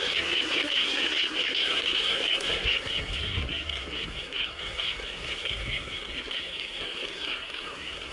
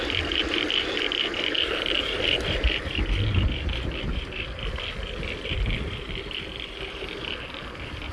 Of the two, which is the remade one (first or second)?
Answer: first